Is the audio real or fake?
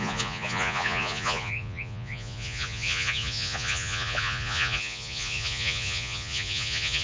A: fake